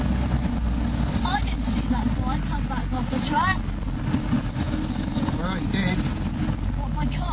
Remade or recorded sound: recorded